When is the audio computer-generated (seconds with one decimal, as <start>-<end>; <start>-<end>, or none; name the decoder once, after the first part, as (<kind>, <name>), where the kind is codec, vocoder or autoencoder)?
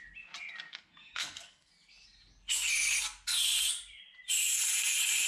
0.7-1.7 (codec, SNAC)